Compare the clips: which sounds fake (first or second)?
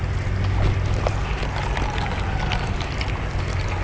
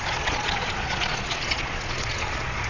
second